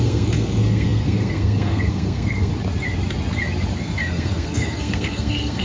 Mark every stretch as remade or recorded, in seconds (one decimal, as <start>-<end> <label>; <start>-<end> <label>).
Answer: 0.0-2.5 remade; 2.5-3.8 recorded; 3.8-5.6 remade